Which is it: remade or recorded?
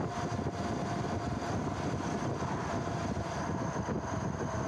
recorded